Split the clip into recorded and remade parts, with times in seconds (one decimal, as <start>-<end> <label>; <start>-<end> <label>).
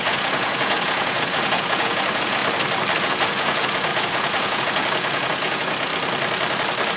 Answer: 0.0-2.4 remade; 2.4-3.0 recorded; 3.0-5.9 remade; 5.9-7.0 recorded